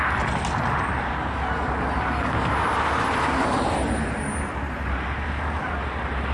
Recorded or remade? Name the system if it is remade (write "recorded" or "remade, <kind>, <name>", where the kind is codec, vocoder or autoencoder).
recorded